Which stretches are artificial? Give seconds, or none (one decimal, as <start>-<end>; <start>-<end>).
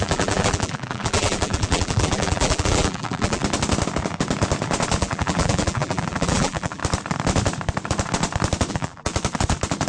0.0-3.4; 5.0-6.8; 8.7-9.1